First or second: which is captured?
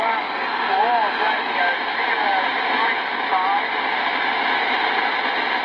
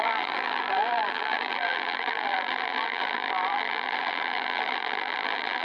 first